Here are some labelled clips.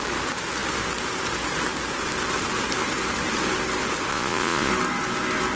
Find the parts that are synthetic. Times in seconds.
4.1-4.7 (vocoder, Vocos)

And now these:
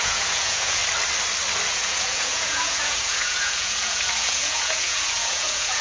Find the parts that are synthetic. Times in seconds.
0.0-0.8 (vocoder, Vocos); 1.7-5.8

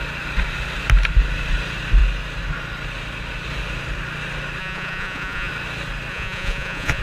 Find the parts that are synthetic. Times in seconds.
4.6-5.5 (vocoder, Vocos); 6.1-7.0

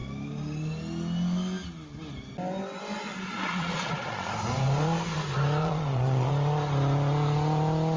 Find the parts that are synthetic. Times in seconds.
3.1-4.3 (vocoder, Vocos); 5.6-6.3

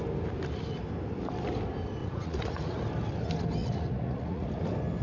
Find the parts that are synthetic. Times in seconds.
2.0-2.8 (vocoder, Vocos); 3.6-4.6

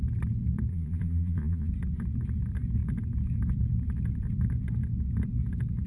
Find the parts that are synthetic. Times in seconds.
0.7-1.7 (vocoder, Vocos)